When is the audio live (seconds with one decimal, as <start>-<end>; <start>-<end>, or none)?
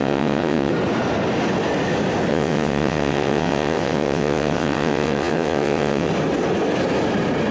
0.7-2.3; 6.1-7.5